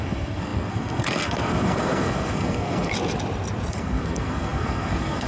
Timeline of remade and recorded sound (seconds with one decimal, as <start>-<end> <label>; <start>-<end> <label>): 0.0-2.9 remade; 2.9-3.7 recorded; 3.7-5.3 remade

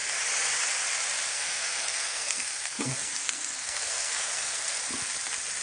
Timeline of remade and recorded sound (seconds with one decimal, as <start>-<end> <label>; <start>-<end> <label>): 0.0-1.3 recorded; 1.3-4.7 remade; 4.7-5.6 recorded

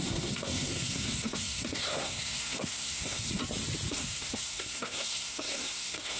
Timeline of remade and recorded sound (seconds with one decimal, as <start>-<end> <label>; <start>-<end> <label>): 0.0-3.4 remade; 3.4-3.9 recorded; 3.9-6.2 remade

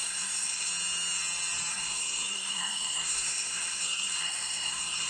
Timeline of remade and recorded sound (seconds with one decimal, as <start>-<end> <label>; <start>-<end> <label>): 0.0-0.7 remade; 0.7-1.7 recorded; 1.7-5.1 remade

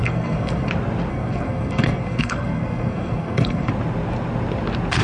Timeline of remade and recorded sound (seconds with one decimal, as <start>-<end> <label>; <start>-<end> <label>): 0.0-0.7 remade; 0.7-1.1 recorded; 1.1-3.7 remade; 3.7-5.0 recorded

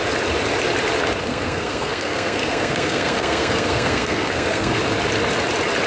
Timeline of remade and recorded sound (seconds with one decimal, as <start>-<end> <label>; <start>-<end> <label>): 0.0-1.3 recorded; 1.3-4.8 remade; 4.8-5.9 recorded